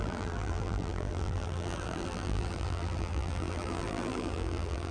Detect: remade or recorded remade